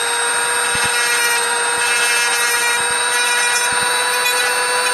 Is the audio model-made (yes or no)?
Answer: no